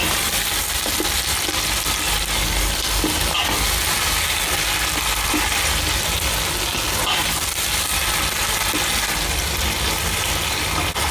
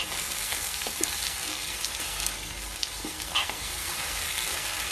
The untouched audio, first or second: first